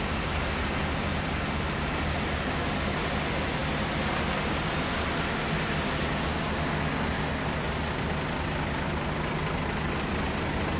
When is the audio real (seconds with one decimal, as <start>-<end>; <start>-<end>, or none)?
0.0-1.1; 1.9-10.8